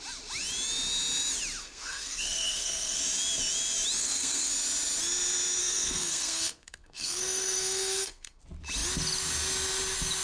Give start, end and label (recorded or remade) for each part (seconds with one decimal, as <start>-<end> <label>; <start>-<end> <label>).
0.0-1.6 recorded; 1.6-3.0 remade; 3.0-4.0 recorded; 4.0-4.5 remade; 4.5-5.6 recorded; 5.6-8.4 remade; 8.4-10.2 recorded